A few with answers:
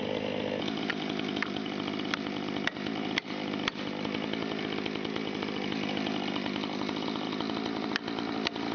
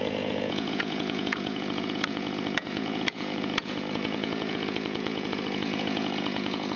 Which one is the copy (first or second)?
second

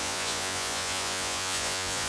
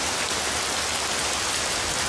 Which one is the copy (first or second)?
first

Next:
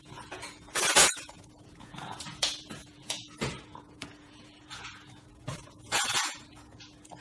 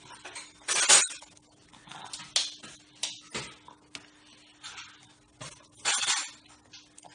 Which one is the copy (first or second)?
first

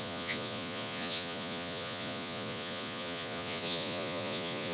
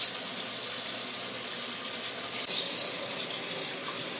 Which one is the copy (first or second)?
first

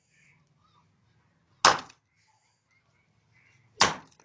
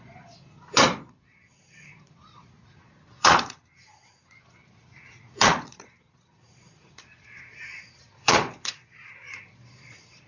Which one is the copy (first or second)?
second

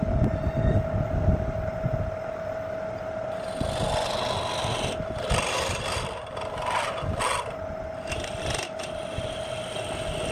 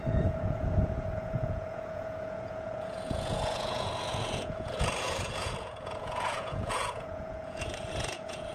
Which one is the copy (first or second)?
second